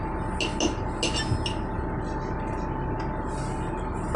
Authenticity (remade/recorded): recorded